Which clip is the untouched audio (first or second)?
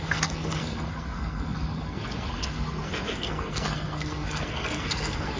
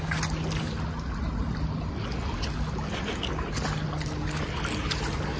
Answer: second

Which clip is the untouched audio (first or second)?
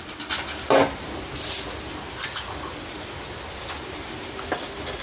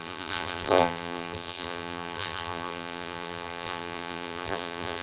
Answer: first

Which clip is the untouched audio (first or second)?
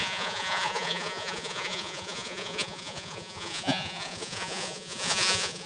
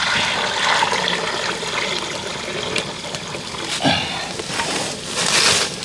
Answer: second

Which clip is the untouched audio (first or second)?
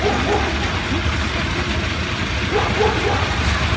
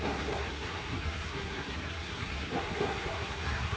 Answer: first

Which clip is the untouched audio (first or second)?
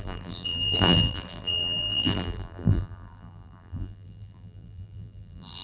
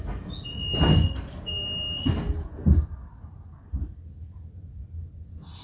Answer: second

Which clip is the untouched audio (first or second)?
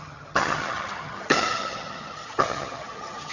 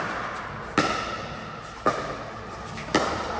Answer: second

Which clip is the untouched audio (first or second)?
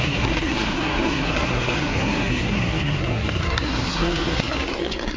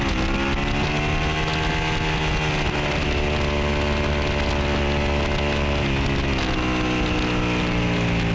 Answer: second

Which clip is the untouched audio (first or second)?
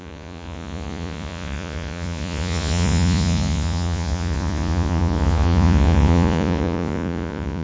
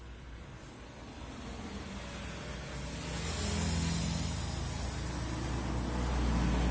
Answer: second